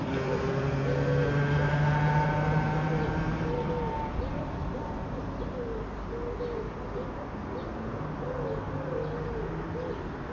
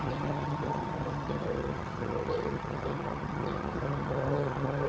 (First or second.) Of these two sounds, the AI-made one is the second